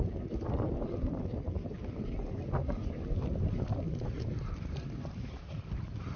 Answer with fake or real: real